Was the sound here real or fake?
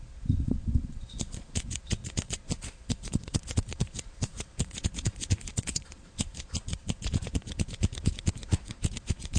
fake